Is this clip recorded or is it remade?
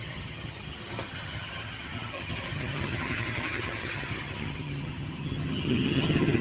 remade